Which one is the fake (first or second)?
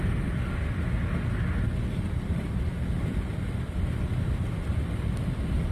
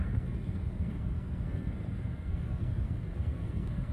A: second